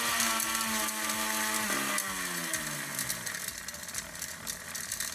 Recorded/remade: recorded